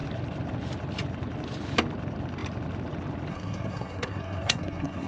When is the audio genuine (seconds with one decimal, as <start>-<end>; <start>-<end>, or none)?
0.0-3.3